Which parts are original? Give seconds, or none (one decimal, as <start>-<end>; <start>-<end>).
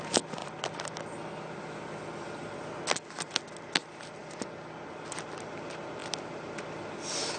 0.0-0.4; 1.0-4.2; 5.2-6.0; 6.6-7.4